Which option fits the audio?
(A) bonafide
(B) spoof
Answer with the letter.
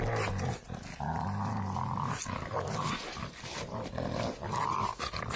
A